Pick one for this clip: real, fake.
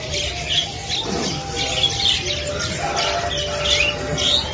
real